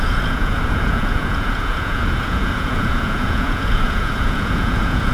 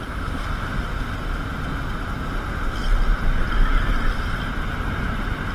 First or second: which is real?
second